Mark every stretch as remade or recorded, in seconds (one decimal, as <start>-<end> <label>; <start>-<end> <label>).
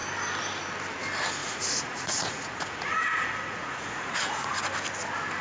0.0-1.4 recorded; 1.4-4.6 remade; 4.6-5.4 recorded